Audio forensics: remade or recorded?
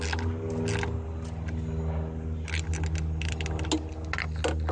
recorded